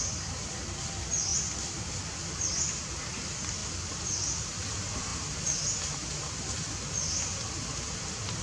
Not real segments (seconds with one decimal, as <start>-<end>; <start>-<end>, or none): 3.6-4.6